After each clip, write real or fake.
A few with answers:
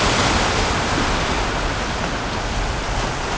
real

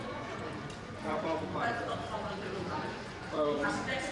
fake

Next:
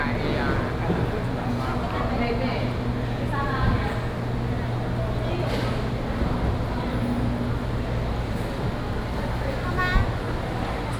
real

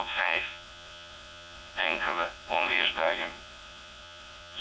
fake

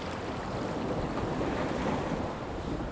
real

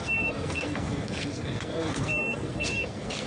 fake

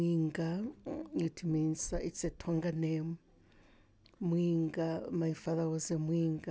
real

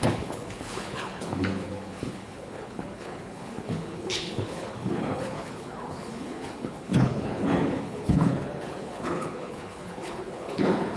fake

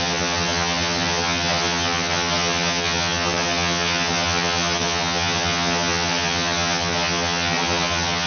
fake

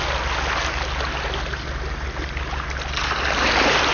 real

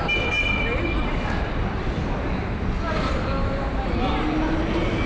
real